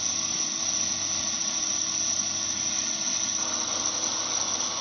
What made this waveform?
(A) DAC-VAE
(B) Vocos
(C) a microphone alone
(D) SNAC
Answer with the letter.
C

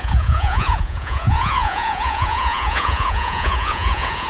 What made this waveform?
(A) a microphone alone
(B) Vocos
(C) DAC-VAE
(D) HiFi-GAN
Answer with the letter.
B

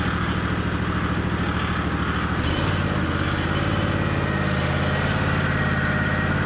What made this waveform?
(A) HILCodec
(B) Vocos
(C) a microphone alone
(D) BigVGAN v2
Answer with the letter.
C